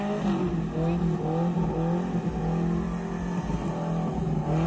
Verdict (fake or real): real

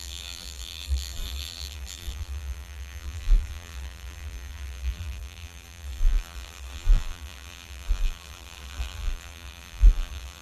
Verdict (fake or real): fake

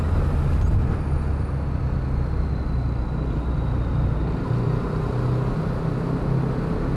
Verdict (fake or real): real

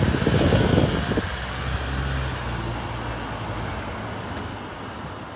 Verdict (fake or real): real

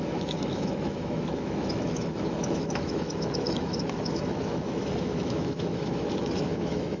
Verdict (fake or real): fake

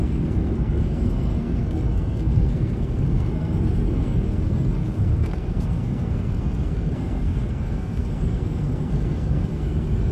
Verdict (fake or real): fake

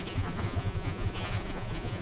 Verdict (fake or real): fake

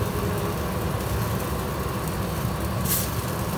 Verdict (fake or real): real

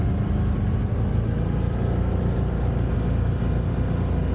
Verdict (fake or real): real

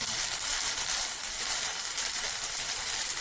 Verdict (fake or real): fake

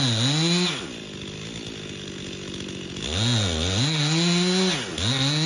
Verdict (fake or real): real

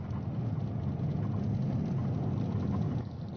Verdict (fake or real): real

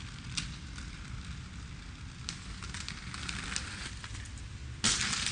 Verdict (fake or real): real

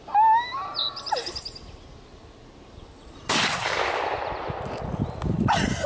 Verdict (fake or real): real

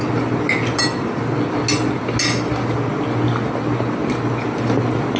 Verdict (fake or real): real